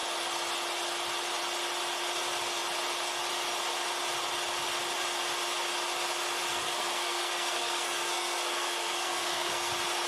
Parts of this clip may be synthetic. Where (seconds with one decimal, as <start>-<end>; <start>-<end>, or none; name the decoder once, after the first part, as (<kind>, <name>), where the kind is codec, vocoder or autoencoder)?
6.5-9.7 (codec, SNAC)